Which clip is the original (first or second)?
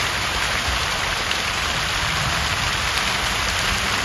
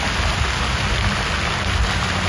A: second